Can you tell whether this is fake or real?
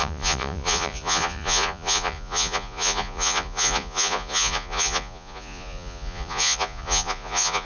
fake